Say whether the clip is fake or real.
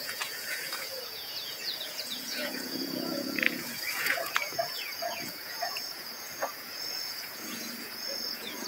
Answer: fake